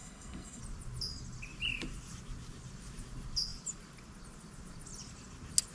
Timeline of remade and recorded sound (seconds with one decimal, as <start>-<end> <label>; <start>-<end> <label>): 0.0-0.6 remade; 0.6-5.7 recorded